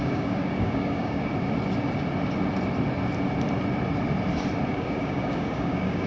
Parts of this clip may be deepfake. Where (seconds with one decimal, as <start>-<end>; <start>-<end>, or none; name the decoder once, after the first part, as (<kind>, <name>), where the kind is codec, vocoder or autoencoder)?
0.0-1.3 (codec, DAC); 4.7-6.1